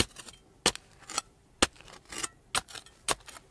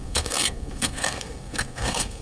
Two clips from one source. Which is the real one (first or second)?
first